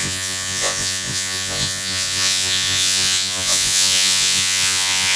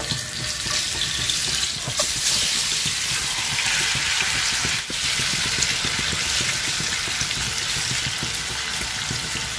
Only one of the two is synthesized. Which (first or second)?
first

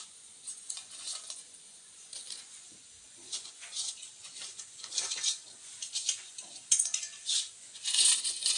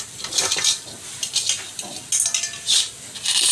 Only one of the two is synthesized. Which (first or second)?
first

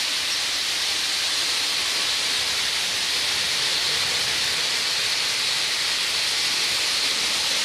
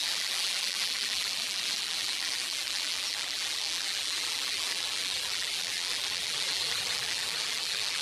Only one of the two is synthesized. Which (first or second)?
second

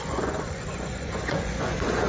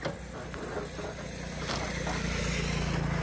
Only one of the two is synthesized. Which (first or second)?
first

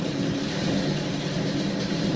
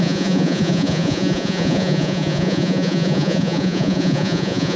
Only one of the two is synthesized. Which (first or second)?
second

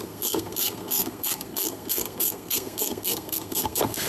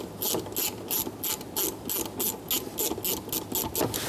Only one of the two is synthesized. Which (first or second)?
first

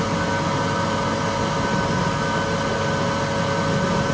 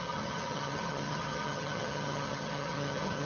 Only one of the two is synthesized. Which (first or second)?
second